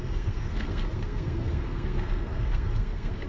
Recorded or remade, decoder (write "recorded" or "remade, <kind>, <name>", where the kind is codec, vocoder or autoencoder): remade, codec, SNAC